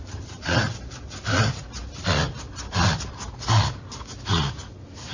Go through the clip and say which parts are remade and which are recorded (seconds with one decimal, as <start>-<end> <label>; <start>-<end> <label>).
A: 0.0-5.1 recorded